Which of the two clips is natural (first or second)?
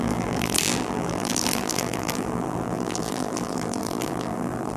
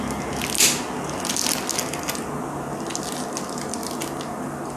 second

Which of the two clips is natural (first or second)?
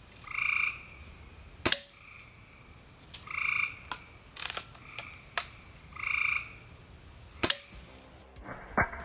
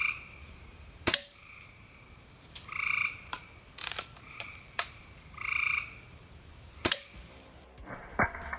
first